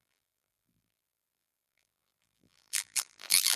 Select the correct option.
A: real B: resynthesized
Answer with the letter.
B